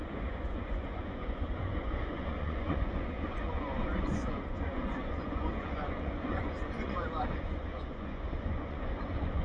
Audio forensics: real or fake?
fake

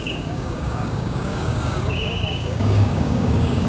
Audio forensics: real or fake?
fake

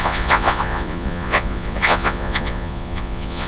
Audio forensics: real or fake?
fake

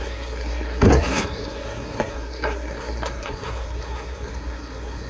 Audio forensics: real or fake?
fake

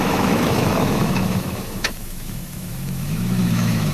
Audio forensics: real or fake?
fake